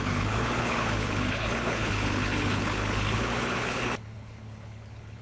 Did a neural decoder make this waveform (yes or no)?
yes